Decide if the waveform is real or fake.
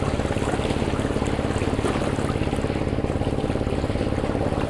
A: real